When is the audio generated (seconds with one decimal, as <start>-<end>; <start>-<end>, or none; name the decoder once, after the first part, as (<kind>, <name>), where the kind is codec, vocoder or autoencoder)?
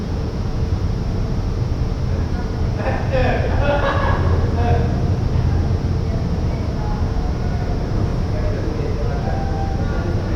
0.0-0.6 (vocoder, Vocos)